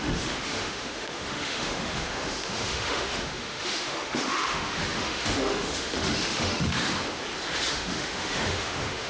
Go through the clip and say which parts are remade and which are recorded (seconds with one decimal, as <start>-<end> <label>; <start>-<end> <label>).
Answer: 0.0-6.9 remade; 6.9-7.7 recorded; 7.7-9.1 remade